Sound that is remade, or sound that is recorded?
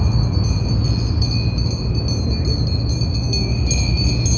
recorded